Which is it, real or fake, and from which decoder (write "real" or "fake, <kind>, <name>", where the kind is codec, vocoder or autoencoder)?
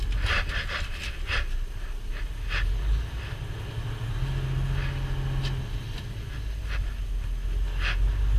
real